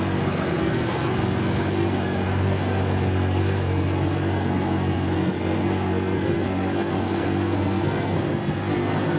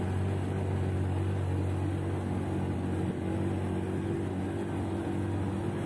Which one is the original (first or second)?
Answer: second